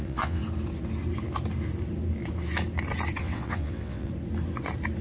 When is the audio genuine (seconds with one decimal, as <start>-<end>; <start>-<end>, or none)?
0.4-3.2; 4.1-5.0